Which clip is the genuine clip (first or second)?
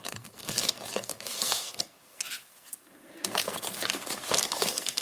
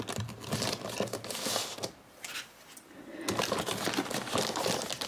second